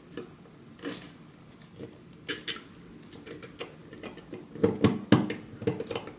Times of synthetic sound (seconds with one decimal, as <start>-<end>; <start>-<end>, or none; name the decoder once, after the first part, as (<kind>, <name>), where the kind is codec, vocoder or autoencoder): none